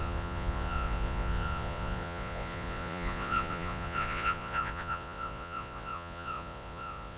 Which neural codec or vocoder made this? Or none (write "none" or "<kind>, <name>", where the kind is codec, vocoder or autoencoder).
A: vocoder, Vocos